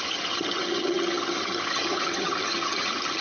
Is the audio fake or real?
fake